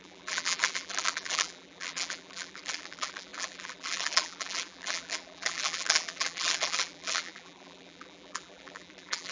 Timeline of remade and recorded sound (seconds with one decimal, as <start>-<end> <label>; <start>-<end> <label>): 0.0-9.3 remade